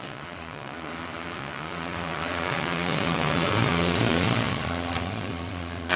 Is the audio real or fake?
fake